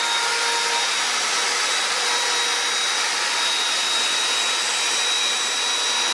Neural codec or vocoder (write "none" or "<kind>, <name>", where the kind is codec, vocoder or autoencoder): none